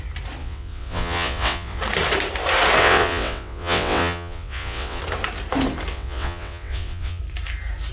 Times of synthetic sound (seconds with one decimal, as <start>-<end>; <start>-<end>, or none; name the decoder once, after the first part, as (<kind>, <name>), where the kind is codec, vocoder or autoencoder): 0.4-1.8 (vocoder, WaveNeXt); 2.8-5.0; 5.9-7.2